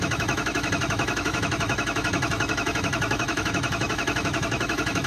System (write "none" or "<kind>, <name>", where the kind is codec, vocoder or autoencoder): autoencoder, DAC-VAE